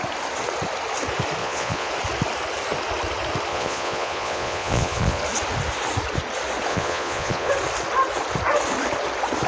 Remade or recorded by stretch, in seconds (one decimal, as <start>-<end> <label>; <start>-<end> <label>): 0.0-1.4 recorded; 1.4-1.9 remade; 1.9-3.5 recorded; 3.5-5.2 remade; 5.2-6.7 recorded; 6.7-7.5 remade; 7.5-9.5 recorded